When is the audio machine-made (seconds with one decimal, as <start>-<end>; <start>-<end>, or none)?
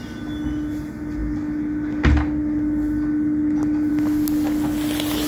none